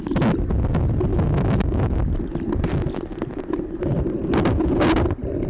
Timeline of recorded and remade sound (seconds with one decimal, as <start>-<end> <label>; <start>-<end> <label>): 0.0-1.1 recorded; 1.1-1.8 remade; 1.8-5.5 recorded